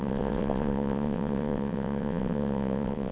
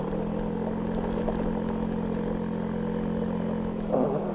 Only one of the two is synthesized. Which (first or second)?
first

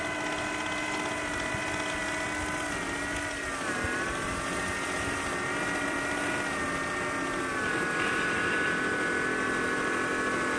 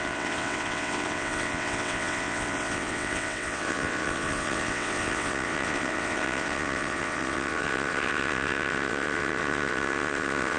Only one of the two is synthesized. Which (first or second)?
second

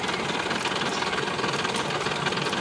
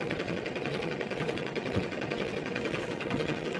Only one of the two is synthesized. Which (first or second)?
second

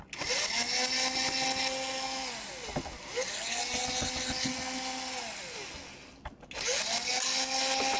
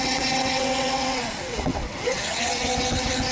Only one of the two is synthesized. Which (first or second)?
second